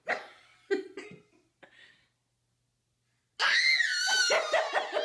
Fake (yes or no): no